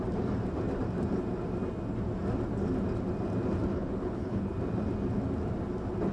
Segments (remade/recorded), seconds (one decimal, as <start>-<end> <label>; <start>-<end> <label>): 0.0-3.7 recorded; 3.7-4.5 remade; 4.5-6.1 recorded